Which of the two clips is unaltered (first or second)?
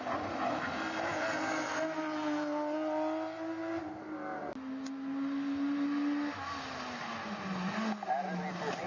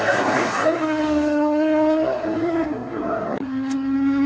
first